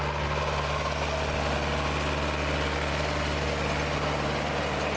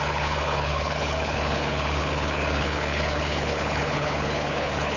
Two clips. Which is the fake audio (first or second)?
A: second